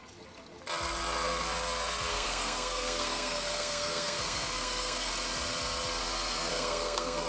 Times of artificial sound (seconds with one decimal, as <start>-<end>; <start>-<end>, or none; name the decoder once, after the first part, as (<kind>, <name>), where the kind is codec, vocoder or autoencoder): 2.1-5.1 (codec, SNAC); 6.5-7.3